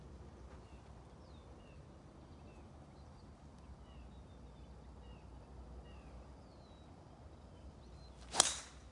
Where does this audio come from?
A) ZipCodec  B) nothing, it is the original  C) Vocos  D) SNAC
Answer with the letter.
B